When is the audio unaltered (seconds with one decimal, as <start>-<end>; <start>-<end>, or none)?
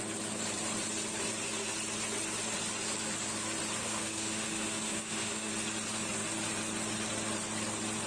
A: 0.0-3.8; 5.5-8.1